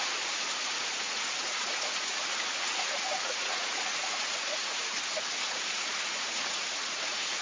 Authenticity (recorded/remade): remade